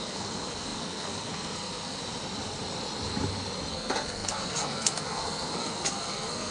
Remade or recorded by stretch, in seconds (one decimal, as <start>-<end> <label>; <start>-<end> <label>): 0.0-2.0 remade; 2.0-3.7 recorded; 3.7-6.5 remade